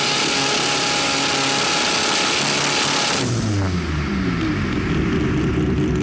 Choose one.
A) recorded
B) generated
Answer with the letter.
A